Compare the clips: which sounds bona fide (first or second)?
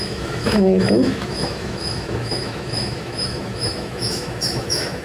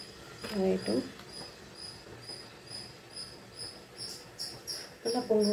second